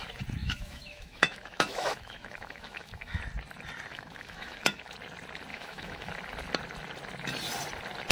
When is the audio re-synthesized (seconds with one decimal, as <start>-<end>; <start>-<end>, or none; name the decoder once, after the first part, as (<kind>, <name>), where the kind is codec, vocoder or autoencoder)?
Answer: 0.4-3.2 (autoencoder, DAC-VAE); 3.9-4.9; 5.5-6.1